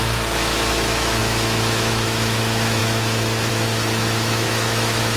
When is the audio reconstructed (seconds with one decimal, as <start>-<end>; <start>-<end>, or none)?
0.0-5.2